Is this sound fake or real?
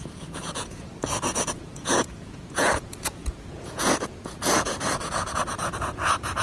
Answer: fake